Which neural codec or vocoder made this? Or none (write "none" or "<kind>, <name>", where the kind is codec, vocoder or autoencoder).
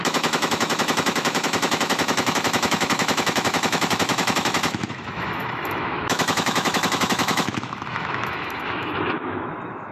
autoencoder, DAC-VAE